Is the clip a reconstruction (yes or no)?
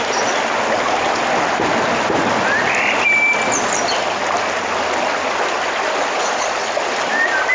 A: no